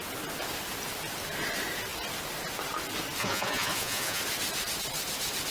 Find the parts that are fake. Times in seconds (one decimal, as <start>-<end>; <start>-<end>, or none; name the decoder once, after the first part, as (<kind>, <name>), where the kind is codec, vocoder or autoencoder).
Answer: 3.2-4.2 (vocoder, Vocos)